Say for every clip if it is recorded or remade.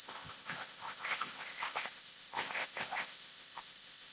remade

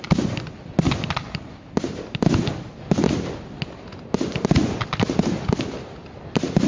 recorded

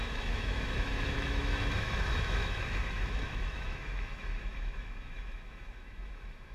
remade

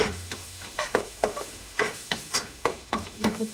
remade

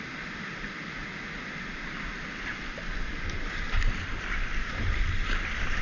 recorded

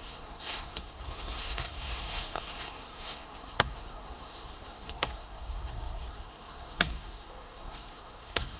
remade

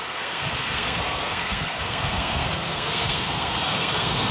remade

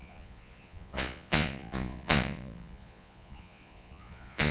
remade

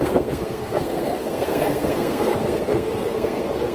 remade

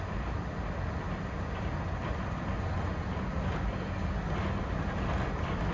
recorded